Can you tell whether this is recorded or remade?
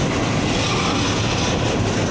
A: recorded